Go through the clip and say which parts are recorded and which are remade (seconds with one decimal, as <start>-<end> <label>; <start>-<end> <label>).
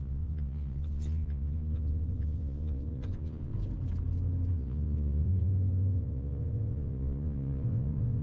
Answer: 0.0-3.5 remade; 3.5-4.5 recorded; 4.5-8.2 remade